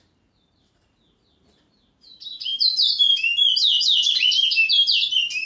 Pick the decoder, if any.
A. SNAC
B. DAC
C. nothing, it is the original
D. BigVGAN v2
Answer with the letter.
D